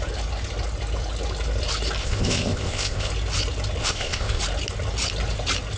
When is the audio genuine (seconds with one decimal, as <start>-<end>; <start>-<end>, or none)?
0.0-2.0; 3.1-3.8; 4.4-5.8